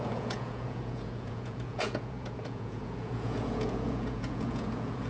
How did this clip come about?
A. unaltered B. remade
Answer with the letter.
B